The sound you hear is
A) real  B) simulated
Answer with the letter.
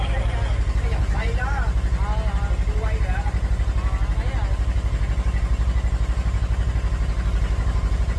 A